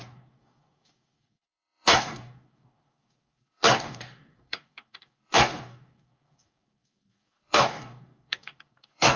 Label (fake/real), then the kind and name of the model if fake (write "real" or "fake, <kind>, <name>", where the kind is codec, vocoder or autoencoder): fake, codec, DAC